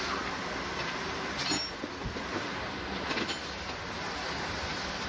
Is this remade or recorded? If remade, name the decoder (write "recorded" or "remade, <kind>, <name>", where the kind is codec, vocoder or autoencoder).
recorded